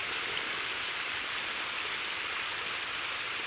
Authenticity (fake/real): real